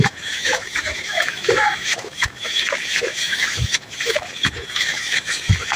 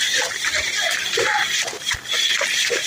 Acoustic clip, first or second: second